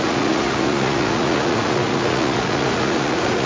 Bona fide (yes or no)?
no